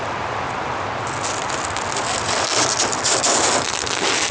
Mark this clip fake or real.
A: real